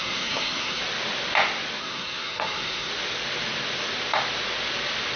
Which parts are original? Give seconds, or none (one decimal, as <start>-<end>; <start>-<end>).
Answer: 0.8-1.8; 2.9-5.2